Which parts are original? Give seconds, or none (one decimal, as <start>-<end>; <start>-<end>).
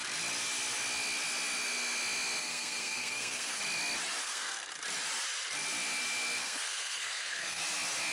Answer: 0.0-2.4; 3.6-4.2; 4.7-6.4; 7.6-8.1